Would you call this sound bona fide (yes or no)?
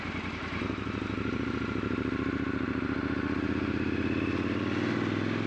yes